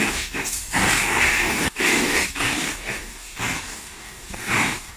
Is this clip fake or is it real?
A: fake